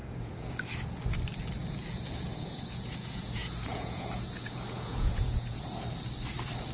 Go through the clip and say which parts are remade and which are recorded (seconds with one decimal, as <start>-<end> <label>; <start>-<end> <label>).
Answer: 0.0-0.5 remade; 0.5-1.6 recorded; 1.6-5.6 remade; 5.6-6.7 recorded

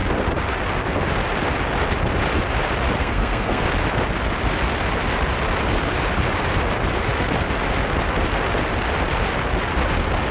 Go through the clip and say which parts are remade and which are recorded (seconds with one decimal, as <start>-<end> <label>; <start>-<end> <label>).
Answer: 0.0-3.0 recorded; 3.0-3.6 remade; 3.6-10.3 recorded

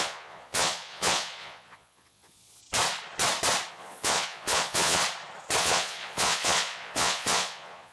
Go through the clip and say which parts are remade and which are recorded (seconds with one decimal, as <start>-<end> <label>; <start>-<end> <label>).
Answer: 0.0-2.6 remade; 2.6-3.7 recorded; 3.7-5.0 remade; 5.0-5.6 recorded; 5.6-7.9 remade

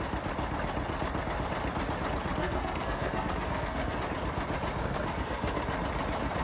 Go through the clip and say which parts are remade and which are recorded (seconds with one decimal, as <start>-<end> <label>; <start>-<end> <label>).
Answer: 0.0-2.4 recorded; 2.4-4.0 remade; 4.0-4.8 recorded; 4.8-5.6 remade; 5.6-6.4 recorded

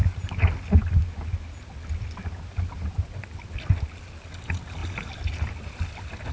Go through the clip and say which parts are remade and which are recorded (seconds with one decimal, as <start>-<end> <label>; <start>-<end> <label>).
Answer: 0.0-4.8 recorded; 4.8-6.3 remade

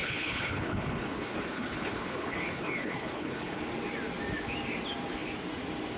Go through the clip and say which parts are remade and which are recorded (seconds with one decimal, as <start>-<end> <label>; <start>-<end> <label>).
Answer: 0.0-3.6 remade; 3.6-6.0 recorded